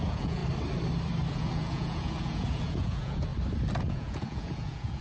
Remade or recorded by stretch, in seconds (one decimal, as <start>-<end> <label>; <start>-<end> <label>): 0.0-0.4 remade; 0.4-1.3 recorded; 1.3-3.3 remade; 3.3-3.8 recorded; 3.8-5.0 remade